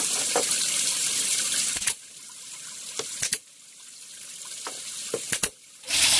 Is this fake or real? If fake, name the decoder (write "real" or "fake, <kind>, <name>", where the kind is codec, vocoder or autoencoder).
real